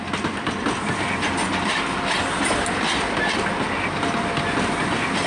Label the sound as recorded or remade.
recorded